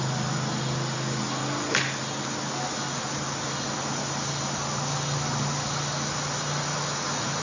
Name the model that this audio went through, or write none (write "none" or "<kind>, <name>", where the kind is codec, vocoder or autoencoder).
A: none